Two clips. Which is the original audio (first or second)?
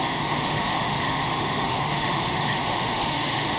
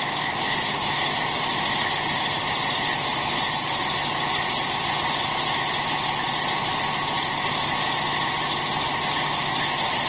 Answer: second